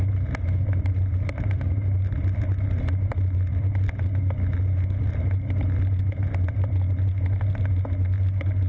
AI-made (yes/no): no